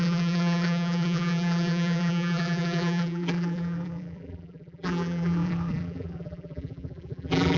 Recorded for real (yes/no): no